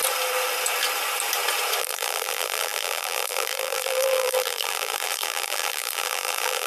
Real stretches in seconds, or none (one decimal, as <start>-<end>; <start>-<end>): 0.0-1.8